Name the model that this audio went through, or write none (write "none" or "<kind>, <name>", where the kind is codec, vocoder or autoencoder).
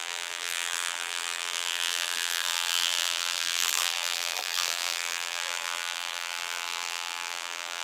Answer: vocoder, BigVGAN v2